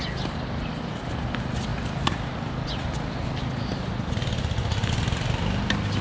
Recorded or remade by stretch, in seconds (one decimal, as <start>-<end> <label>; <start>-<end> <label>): 0.0-6.0 recorded